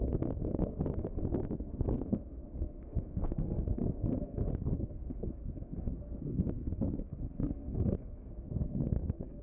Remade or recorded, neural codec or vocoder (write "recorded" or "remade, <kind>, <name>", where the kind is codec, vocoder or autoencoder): remade, codec, SNAC